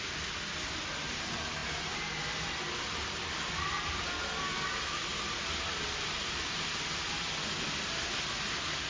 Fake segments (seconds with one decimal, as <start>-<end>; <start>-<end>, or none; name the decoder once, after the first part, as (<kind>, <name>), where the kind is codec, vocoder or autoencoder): none